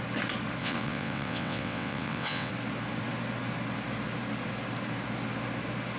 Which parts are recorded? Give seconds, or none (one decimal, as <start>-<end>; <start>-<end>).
0.0-0.6; 2.5-6.0

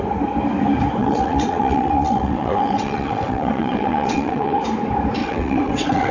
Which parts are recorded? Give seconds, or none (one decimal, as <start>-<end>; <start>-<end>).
0.0-1.0; 4.6-5.2

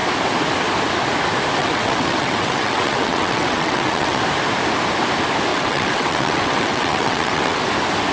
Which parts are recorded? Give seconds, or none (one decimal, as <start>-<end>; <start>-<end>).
0.0-1.6; 4.2-5.5; 7.6-8.1

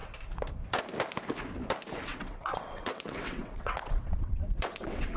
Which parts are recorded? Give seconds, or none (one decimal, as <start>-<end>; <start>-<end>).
0.0-2.1

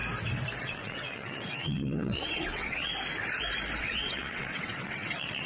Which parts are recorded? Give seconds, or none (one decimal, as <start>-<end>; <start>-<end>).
0.0-0.6; 2.9-3.8